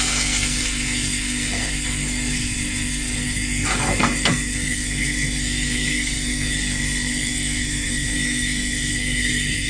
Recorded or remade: remade